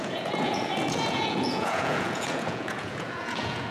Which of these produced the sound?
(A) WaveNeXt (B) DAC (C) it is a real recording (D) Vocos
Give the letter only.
D